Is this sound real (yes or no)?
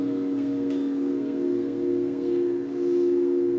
no